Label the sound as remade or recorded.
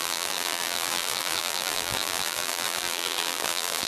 remade